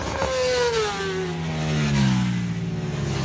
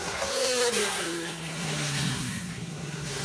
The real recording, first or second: first